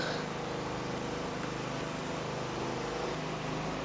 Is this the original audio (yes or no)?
yes